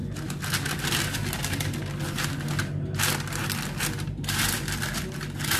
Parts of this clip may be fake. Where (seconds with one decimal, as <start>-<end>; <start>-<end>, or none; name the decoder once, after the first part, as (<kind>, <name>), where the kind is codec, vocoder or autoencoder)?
none